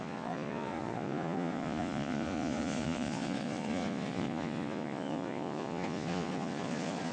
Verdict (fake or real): fake